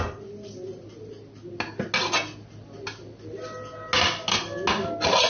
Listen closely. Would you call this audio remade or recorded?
recorded